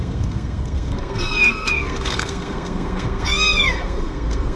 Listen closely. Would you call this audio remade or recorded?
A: remade